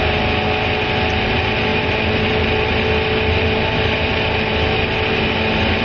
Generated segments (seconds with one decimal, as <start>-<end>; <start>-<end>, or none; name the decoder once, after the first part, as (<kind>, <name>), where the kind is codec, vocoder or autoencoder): none